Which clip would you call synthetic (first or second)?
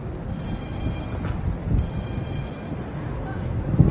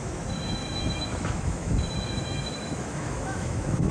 second